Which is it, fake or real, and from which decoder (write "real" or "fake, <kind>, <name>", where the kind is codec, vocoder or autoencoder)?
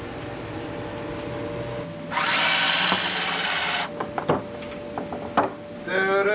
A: real